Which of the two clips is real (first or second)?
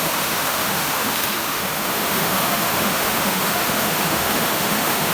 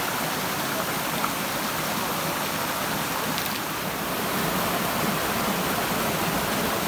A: second